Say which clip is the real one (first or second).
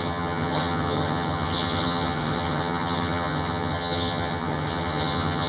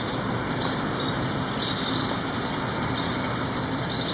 second